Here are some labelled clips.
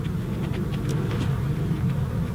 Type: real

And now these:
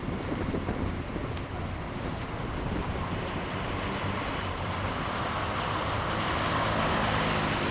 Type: real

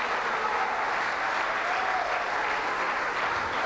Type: real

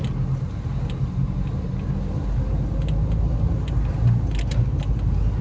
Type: real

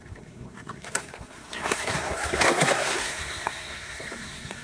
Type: fake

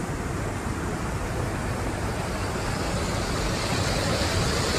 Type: real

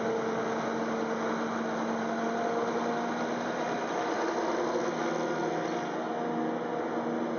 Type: real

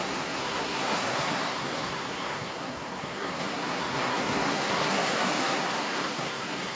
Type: fake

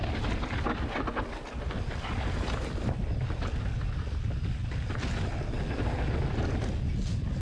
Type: real